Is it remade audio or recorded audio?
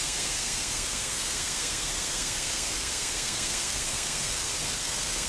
remade